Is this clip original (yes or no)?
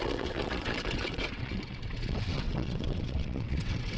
no